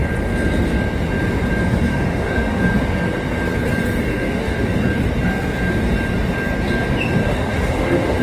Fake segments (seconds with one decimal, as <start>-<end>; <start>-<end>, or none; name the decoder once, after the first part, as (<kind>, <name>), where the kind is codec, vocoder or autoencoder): 1.9-2.6 (autoencoder, DAC-VAE); 4.1-4.8; 7.2-8.2

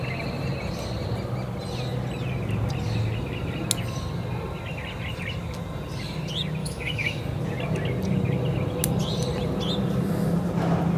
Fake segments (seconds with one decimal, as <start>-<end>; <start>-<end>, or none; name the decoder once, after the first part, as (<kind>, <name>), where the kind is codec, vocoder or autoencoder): 6.6-7.2 (autoencoder, DAC-VAE)

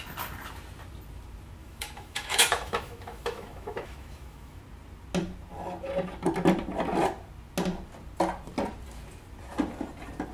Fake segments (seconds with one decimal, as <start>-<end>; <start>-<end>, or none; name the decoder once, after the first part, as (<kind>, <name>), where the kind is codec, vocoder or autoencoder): 1.6-4.6 (autoencoder, DAC-VAE)

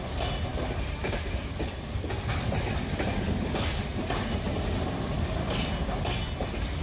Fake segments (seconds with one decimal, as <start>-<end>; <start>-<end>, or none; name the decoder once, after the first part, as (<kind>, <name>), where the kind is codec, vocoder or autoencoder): none